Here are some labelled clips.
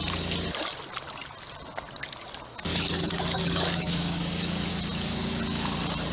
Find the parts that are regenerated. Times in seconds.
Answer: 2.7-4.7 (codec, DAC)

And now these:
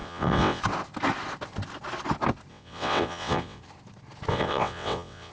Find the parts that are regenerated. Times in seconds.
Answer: 0.0-0.6 (vocoder, WaveNeXt); 2.5-3.6; 4.3-5.3

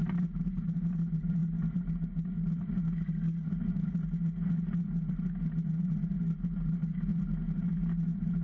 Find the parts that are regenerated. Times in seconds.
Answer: none